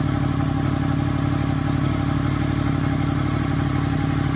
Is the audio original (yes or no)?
yes